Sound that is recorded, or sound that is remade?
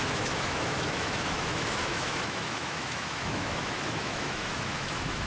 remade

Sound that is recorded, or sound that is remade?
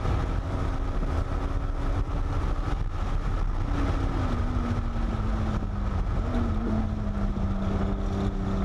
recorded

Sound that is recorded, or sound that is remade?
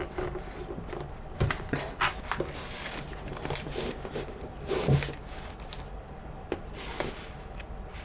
recorded